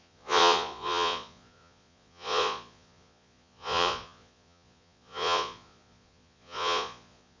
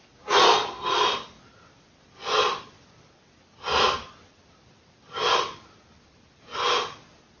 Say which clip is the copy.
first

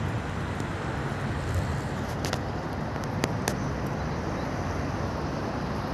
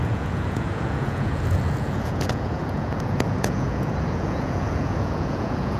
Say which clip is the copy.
second